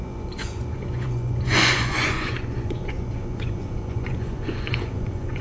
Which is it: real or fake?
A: fake